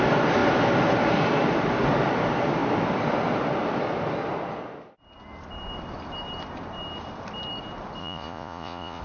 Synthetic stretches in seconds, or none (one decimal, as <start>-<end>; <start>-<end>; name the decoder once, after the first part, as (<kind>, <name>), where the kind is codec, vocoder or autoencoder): 8.0-9.0 (vocoder, Vocos)